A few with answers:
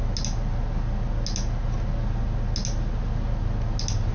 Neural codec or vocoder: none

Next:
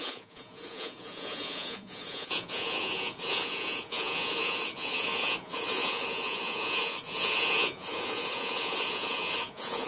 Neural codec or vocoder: vocoder, Vocos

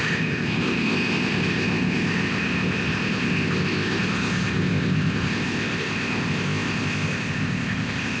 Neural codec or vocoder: codec, ZipCodec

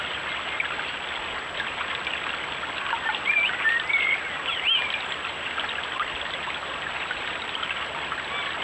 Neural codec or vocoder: none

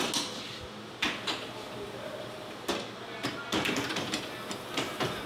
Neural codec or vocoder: none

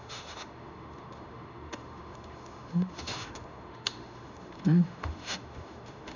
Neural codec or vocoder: autoencoder, DAC-VAE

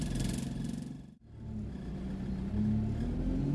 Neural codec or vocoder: none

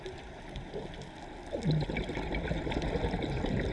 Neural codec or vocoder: none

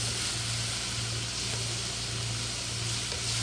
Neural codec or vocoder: none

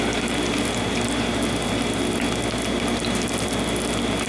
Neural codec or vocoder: none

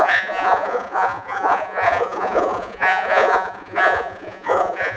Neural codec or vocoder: vocoder, Vocos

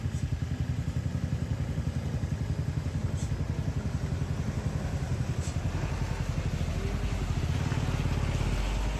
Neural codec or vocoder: none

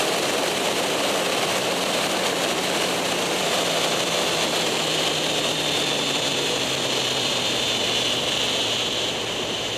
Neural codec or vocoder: vocoder, BigVGAN v2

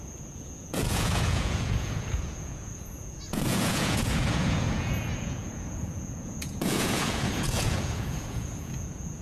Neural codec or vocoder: vocoder, Vocos